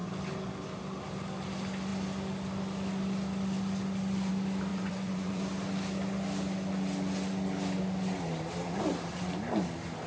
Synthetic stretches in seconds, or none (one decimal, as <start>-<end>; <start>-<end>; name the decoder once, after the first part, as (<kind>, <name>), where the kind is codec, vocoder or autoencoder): 4.7-5.4 (vocoder, Vocos)